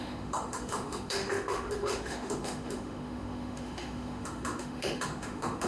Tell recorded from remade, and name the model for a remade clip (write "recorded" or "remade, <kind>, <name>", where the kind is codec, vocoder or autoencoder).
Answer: remade, autoencoder, DAC-VAE